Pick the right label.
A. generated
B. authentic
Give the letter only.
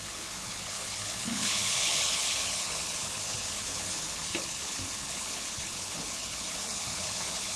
A